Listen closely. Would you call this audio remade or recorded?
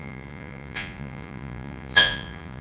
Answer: remade